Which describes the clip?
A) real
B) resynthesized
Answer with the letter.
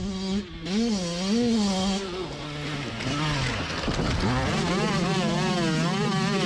A